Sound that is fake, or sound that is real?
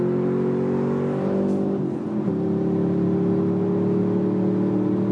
real